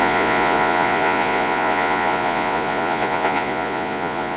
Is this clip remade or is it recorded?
remade